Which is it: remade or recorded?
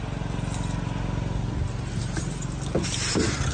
recorded